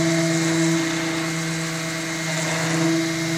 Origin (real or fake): real